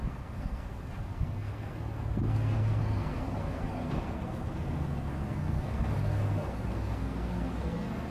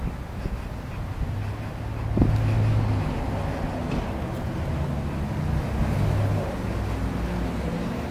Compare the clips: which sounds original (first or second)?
second